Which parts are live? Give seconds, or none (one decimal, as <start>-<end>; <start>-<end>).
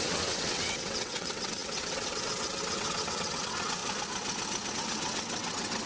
3.8-4.7